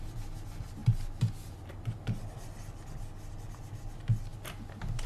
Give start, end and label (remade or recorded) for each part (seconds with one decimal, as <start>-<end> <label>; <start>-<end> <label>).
0.0-5.1 recorded